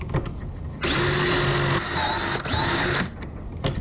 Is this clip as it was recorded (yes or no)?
yes